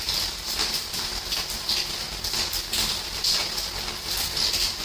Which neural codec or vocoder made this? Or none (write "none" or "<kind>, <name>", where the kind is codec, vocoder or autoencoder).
none